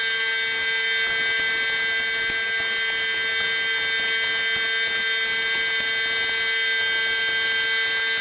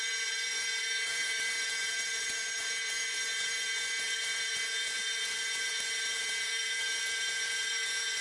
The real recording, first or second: first